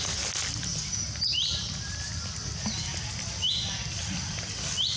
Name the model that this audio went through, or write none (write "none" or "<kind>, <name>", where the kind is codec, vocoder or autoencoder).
none